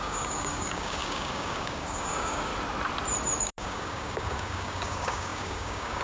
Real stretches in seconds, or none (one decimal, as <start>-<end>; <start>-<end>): 2.5-3.4